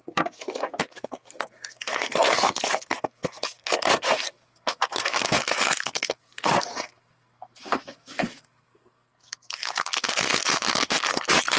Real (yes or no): no